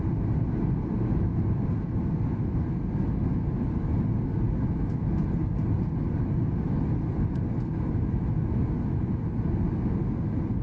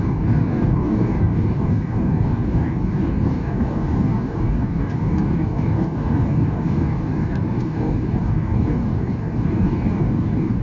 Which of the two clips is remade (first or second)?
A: second